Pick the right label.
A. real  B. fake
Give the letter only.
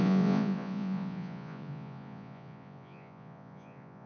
B